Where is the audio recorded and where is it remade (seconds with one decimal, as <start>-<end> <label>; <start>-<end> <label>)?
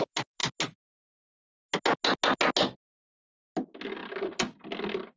0.0-5.2 recorded